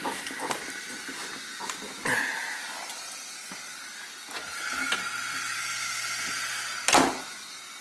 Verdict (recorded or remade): recorded